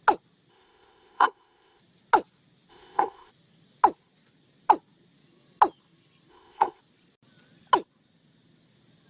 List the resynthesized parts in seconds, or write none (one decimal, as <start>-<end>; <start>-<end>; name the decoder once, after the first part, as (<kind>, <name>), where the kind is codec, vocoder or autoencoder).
0.5-1.8 (codec, ZipCodec); 2.7-3.3; 6.3-6.8